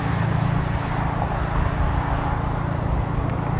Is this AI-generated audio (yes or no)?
no